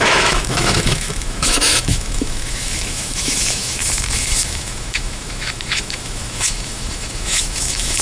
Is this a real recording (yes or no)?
no